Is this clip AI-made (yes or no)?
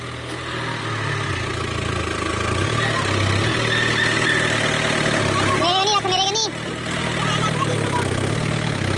no